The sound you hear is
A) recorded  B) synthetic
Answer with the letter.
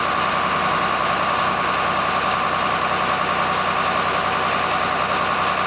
A